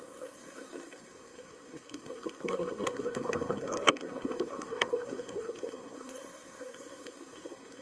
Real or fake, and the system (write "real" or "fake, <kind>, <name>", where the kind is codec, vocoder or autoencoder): fake, codec, SNAC